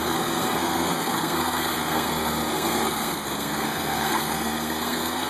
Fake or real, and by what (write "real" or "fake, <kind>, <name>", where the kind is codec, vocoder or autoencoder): fake, codec, SNAC